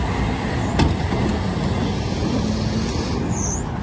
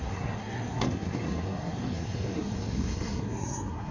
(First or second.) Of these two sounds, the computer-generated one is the second